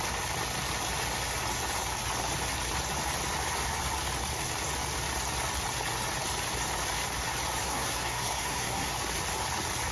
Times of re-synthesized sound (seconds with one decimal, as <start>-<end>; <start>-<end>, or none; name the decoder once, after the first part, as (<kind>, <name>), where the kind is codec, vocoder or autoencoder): 7.6-8.9 (codec, SNAC)

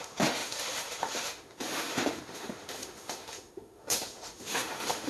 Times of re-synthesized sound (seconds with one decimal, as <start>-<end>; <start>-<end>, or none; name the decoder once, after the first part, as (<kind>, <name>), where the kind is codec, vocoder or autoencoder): 0.0-5.1 (autoencoder, DAC-VAE)

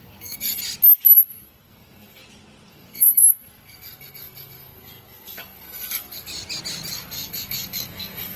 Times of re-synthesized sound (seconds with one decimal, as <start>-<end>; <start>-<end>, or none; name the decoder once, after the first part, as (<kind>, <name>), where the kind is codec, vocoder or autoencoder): 0.0-0.6 (codec, SNAC); 1.3-2.2; 2.7-6.3; 6.9-8.4

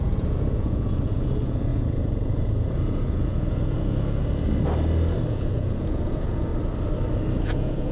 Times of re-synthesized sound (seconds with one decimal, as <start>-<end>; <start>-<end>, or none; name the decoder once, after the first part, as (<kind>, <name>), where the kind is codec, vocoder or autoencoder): 0.0-4.2 (vocoder, Vocos); 5.3-6.5; 7.4-7.9